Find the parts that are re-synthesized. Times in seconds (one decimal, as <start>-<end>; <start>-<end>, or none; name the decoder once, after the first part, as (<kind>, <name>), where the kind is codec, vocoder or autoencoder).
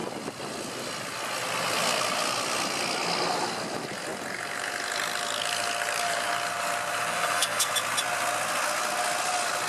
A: 7.1-7.7 (codec, SNAC)